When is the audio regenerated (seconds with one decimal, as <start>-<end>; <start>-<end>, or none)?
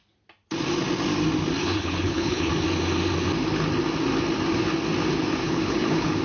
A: 1.6-2.5; 5.4-6.2